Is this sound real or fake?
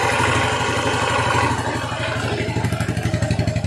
real